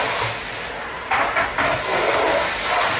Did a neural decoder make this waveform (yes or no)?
no